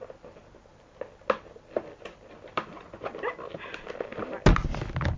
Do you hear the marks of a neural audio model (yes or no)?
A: no